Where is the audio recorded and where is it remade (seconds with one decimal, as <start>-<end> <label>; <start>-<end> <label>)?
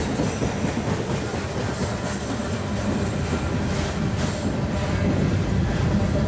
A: 0.0-6.3 recorded